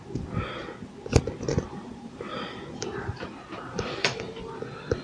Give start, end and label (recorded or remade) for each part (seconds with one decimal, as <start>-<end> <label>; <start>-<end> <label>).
0.0-1.5 recorded; 1.5-3.2 remade; 3.2-5.0 recorded